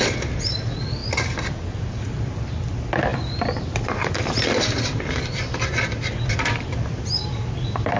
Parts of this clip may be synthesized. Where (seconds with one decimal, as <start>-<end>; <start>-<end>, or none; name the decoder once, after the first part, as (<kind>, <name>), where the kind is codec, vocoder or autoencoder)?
0.0-1.0 (vocoder, BigVGAN v2); 1.6-8.0